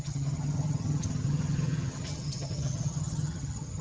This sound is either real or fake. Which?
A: fake